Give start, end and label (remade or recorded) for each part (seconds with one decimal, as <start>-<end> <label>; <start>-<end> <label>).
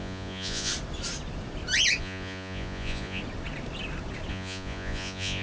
0.0-0.7 remade; 0.7-2.0 recorded; 2.0-3.2 remade; 3.2-4.3 recorded; 4.3-5.4 remade